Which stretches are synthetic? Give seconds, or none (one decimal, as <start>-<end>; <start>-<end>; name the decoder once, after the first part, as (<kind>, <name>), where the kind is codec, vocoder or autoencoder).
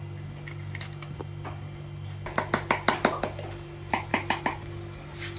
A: none